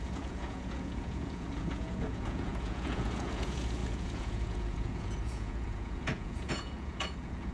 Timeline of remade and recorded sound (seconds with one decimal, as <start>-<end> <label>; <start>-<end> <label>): 0.0-7.5 remade